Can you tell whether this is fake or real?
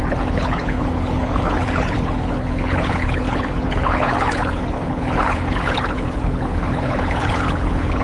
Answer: fake